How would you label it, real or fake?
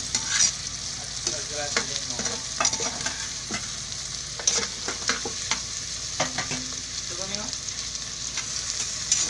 real